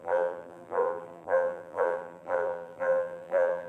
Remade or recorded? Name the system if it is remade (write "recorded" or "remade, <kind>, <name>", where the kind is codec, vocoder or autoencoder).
remade, vocoder, BigVGAN v2